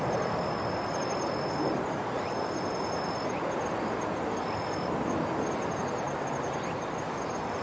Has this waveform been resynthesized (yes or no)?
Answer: no